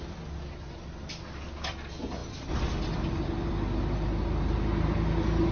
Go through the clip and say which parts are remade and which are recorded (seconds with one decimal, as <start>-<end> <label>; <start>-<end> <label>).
0.0-5.5 recorded